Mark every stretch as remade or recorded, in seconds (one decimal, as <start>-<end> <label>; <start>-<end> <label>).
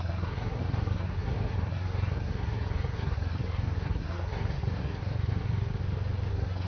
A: 0.0-5.8 remade; 5.8-6.3 recorded; 6.3-6.7 remade